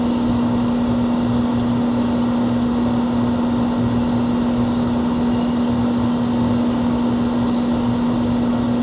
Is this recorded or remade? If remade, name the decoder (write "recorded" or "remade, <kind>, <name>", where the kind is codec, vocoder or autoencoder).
recorded